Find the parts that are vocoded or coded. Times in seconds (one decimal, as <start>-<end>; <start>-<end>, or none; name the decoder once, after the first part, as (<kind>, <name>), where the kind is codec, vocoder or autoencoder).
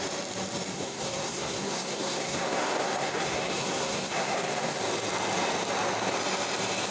0.7-4.8 (codec, SNAC)